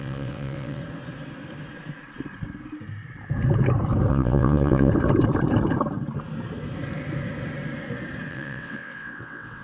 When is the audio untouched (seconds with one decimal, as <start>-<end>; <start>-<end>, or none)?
0.8-4.1; 4.9-8.3

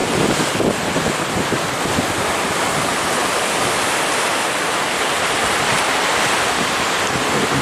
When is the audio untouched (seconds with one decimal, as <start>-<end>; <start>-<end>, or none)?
0.0-7.6

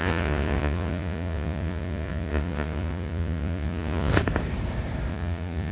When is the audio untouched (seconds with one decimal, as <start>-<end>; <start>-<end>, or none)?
4.1-5.1